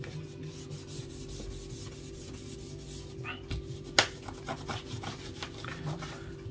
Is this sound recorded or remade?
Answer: recorded